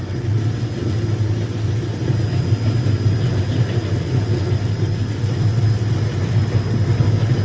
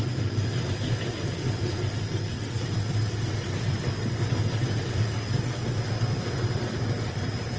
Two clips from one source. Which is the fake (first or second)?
second